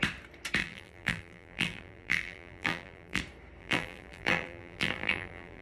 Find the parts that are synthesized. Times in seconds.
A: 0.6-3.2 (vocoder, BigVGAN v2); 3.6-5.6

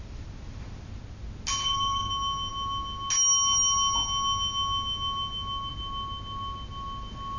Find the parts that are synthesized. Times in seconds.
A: 1.6-2.1 (codec, DAC)

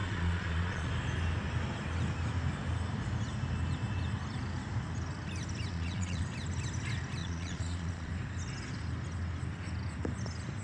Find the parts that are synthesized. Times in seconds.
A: 0.0-0.9 (vocoder, Vocos); 5.7-6.2; 7.2-8.1

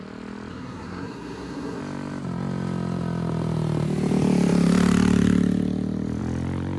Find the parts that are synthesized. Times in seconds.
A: 0.5-1.8 (codec, SNAC)

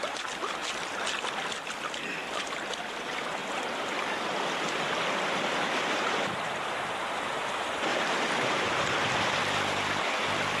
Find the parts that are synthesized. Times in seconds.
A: 7.9-8.8 (vocoder, BigVGAN v2)

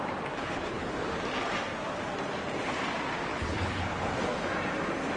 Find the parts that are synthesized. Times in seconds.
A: 0.4-0.9 (codec, HILCodec); 3.3-4.1

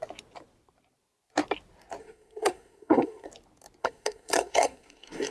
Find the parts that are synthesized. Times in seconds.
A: 2.0-3.3 (codec, SNAC); 3.8-5.3

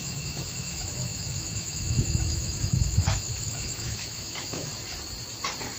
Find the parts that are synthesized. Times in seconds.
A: 0.0-4.7 (autoencoder, DAC-VAE)